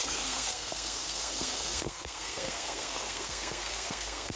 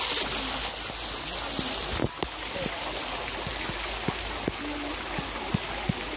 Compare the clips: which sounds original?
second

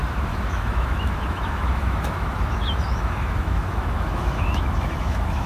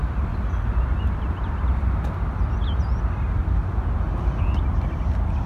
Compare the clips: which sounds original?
second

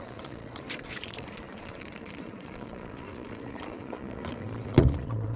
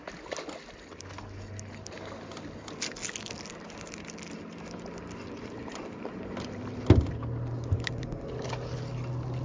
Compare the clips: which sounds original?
second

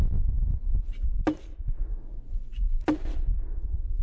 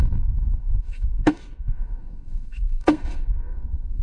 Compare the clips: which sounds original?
first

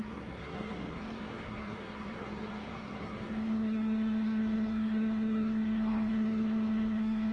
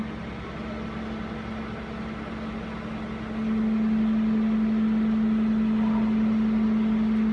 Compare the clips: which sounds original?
second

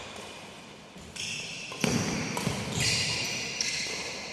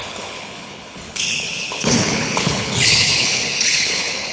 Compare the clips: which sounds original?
first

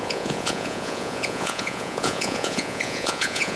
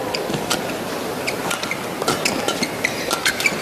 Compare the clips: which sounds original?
second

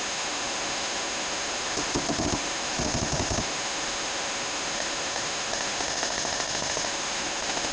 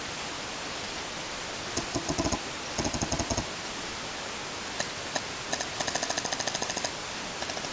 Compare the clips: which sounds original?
second